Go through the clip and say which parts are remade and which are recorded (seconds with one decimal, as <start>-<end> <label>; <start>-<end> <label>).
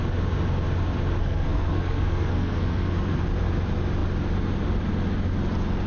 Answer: 0.0-1.2 recorded; 1.2-3.2 remade; 3.2-5.9 recorded